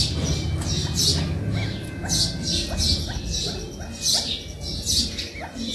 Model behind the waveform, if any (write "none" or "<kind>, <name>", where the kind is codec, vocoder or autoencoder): none